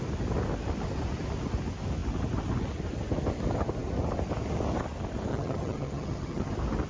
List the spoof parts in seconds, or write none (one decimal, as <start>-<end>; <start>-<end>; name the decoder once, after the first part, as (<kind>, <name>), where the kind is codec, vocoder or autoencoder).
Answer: 5.3-6.5 (vocoder, HiFi-GAN)